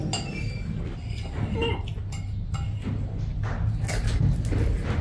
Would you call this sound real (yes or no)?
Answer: yes